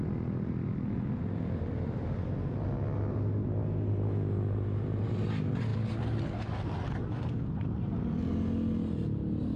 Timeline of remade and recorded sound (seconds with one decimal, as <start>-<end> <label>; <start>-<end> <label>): 0.0-9.6 recorded